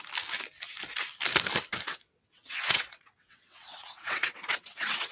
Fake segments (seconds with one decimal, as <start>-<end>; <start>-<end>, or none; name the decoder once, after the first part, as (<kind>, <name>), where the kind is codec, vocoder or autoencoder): 1.9-5.1 (vocoder, WaveNeXt)